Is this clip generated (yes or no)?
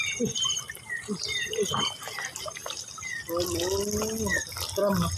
no